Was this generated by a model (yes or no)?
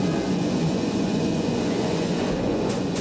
yes